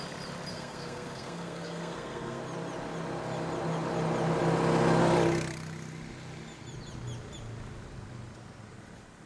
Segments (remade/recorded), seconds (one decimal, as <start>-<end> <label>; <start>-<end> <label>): 0.0-0.5 recorded; 0.5-2.4 remade; 2.4-9.3 recorded